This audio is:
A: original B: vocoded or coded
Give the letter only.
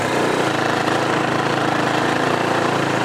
B